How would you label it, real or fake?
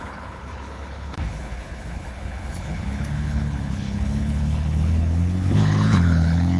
fake